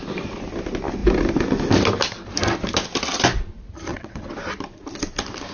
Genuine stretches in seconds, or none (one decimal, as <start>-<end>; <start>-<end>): 0.0-3.9; 4.4-5.5